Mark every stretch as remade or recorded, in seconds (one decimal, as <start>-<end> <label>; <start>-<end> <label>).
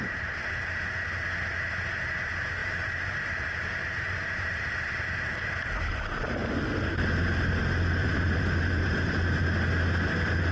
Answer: 0.0-2.6 recorded; 2.6-4.7 remade; 4.7-8.0 recorded; 8.0-9.0 remade; 9.0-10.5 recorded